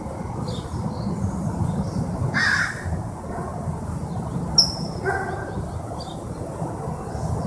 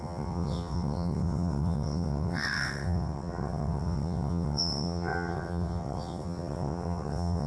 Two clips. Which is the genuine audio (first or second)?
first